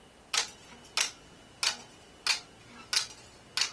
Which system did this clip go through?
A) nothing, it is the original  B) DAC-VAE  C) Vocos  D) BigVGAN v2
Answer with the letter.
A